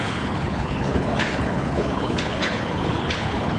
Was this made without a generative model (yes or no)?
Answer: no